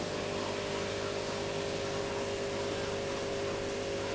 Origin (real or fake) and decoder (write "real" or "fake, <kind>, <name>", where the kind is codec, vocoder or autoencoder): real